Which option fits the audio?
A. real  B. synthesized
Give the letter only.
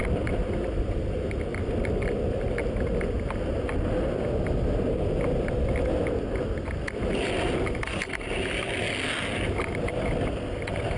A